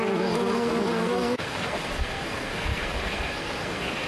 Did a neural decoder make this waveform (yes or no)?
yes